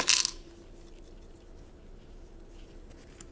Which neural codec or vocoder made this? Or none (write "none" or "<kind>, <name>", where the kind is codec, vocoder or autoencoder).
none